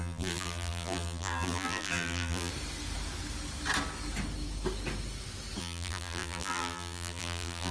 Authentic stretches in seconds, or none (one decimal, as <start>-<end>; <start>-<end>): 2.5-5.6